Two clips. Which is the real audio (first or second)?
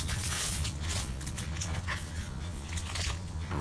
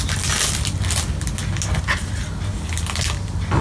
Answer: second